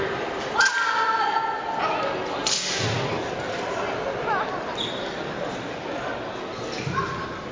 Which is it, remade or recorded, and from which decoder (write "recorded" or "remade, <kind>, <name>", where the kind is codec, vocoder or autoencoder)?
recorded